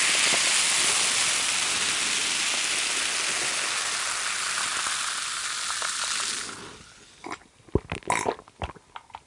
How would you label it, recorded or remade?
recorded